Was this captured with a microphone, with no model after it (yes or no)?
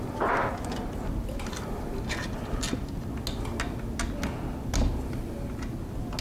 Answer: yes